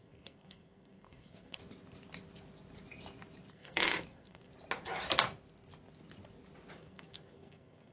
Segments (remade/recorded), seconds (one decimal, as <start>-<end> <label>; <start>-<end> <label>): 0.0-1.6 remade; 1.6-3.5 recorded; 3.5-4.5 remade; 4.5-6.8 recorded; 6.8-7.9 remade